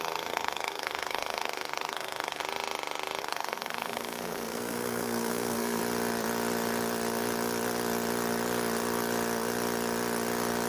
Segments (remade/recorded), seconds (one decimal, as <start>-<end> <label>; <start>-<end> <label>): 0.0-2.4 remade; 2.4-3.2 recorded; 3.2-5.8 remade; 5.8-10.7 recorded